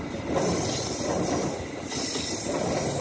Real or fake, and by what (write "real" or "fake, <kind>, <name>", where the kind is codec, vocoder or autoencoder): real